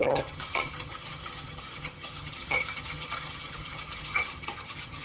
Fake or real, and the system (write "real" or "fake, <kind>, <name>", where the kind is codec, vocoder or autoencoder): fake, vocoder, HiFi-GAN